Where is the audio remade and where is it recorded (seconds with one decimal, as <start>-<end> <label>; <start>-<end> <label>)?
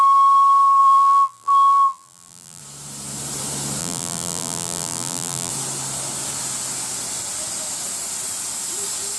0.0-0.8 recorded; 0.8-2.6 remade; 2.6-3.8 recorded; 3.8-5.5 remade; 5.5-9.2 recorded